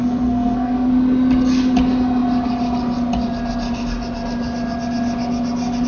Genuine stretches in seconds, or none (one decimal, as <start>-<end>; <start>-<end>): 0.9-5.9